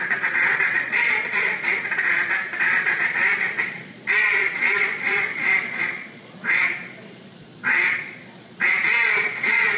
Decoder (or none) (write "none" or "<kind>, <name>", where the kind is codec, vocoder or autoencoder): vocoder, Vocos